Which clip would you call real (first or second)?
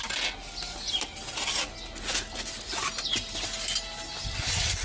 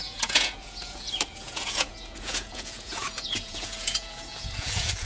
first